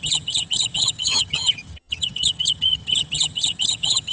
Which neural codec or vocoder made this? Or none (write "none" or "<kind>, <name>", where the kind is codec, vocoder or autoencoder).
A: vocoder, HiFi-GAN